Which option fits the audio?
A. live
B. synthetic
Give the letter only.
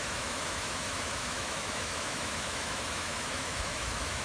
B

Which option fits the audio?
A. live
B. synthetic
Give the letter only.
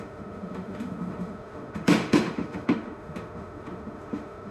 B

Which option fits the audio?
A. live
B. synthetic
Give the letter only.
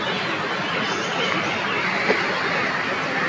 A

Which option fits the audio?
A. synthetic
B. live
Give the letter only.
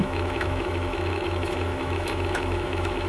A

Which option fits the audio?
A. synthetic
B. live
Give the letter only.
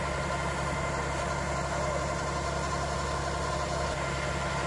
B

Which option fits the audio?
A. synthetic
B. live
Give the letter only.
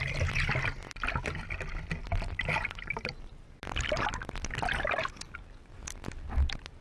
B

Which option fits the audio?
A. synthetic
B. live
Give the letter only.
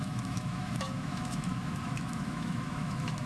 A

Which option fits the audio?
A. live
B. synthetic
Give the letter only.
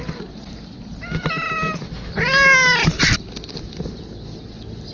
A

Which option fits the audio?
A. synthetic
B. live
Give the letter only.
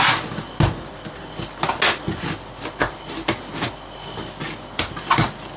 B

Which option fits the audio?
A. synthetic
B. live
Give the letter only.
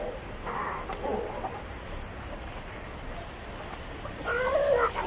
B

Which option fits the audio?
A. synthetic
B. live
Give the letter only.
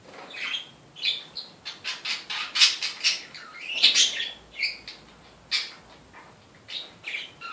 B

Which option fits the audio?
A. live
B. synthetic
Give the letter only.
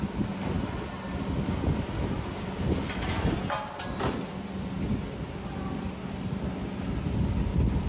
A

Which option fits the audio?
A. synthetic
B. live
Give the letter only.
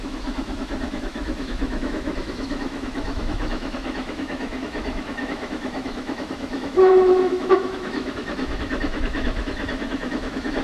A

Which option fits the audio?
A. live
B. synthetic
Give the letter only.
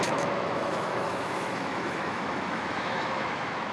B